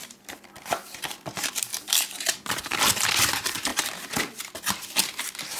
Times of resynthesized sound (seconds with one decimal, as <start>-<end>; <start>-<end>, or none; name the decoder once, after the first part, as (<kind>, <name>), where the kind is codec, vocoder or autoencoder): 0.0-5.6 (vocoder, BigVGAN v2)